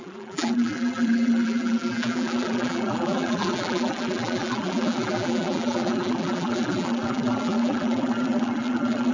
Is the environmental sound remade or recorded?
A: remade